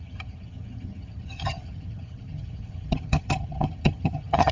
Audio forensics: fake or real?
fake